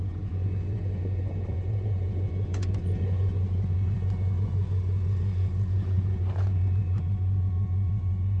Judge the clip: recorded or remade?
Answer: remade